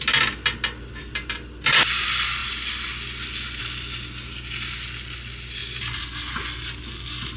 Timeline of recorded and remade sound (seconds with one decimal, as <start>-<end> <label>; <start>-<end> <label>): 0.0-7.4 recorded